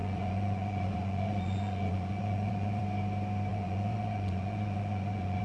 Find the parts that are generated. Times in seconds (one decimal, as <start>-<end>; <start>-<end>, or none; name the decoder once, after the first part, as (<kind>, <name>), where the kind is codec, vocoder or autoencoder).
0.0-2.8 (vocoder, Vocos); 3.5-5.4